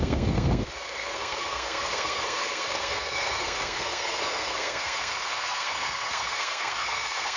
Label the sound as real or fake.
fake